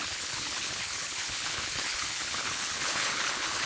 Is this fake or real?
fake